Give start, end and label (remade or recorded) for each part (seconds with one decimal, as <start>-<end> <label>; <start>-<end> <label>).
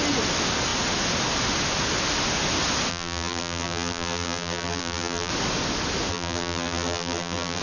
0.0-2.9 recorded; 2.9-5.3 remade; 5.3-6.1 recorded; 6.1-7.6 remade